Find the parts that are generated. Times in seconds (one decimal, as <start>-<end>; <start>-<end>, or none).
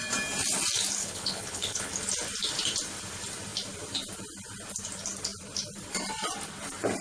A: 1.0-1.9